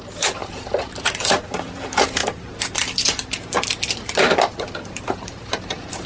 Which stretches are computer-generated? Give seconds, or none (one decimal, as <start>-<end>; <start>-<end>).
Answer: 0.0-2.2; 4.9-6.1